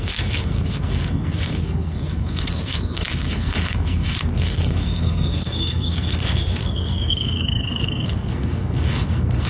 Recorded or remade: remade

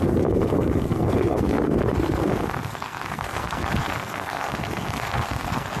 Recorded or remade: remade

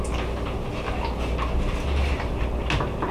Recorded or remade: recorded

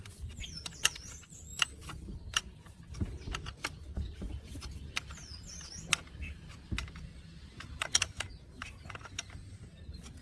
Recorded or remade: recorded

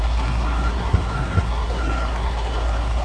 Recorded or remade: remade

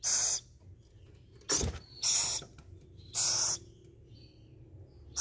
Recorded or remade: recorded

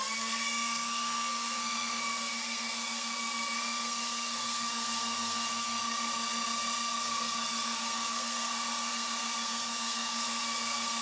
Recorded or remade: remade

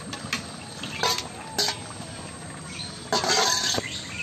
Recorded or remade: recorded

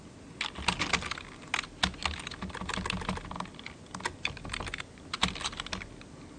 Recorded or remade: recorded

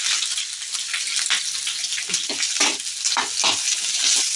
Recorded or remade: recorded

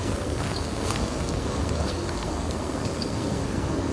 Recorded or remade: remade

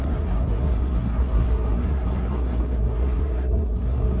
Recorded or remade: remade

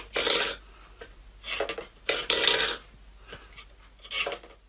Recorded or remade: recorded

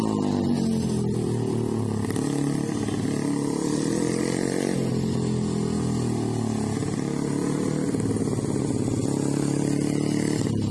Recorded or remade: recorded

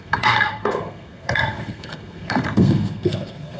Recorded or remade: remade